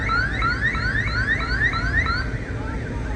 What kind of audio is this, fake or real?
real